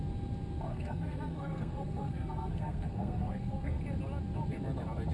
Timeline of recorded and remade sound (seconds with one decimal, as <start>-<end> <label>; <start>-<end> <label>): 0.0-0.7 recorded; 0.7-3.8 remade; 3.8-5.1 recorded